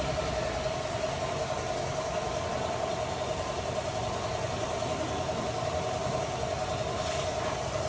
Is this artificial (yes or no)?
no